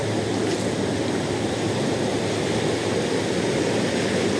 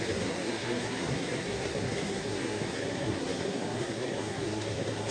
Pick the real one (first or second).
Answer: first